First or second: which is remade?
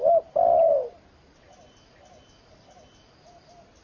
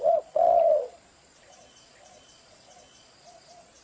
second